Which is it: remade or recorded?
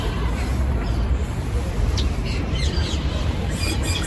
remade